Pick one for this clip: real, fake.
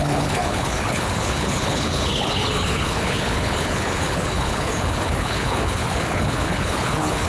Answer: fake